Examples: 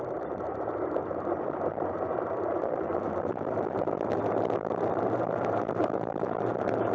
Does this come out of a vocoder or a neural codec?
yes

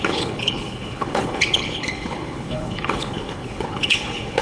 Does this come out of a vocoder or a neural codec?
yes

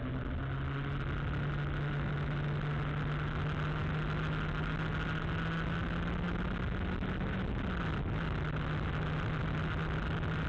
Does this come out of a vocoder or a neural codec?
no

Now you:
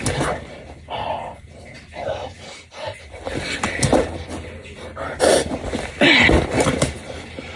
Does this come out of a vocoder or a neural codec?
no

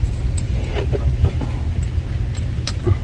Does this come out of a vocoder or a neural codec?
no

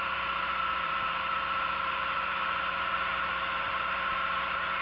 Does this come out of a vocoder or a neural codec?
yes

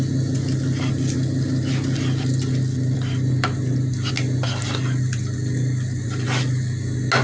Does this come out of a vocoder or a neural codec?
no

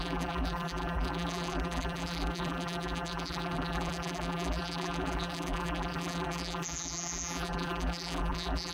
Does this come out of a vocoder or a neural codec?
yes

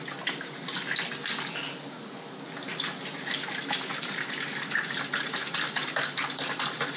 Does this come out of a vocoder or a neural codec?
no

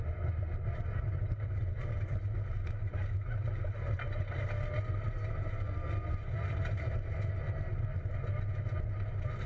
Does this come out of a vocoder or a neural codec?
no